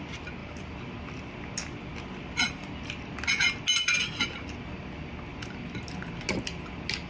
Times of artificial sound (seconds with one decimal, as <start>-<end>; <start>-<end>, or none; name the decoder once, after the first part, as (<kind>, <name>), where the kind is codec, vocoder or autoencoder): none